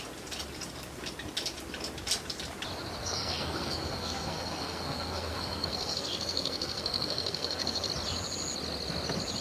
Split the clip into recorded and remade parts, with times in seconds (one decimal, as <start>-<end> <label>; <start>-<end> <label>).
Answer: 0.0-3.0 recorded; 3.0-7.9 remade; 7.9-9.4 recorded